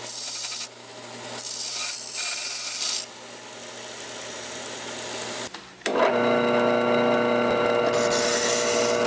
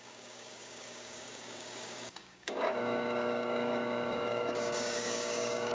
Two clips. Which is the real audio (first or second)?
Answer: first